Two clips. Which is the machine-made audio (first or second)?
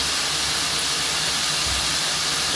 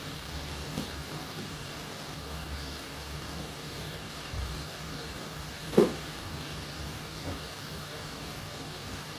second